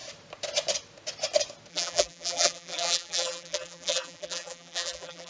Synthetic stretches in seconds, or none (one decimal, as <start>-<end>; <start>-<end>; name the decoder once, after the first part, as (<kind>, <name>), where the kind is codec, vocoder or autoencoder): 1.7-5.3 (vocoder, BigVGAN v2)